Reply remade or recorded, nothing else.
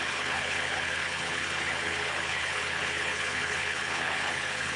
remade